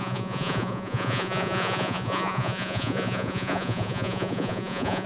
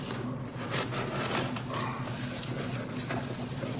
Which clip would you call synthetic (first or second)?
first